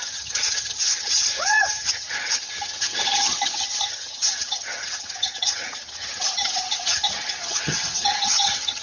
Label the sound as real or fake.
fake